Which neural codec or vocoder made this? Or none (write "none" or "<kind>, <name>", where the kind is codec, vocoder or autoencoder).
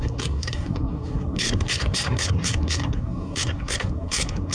codec, SNAC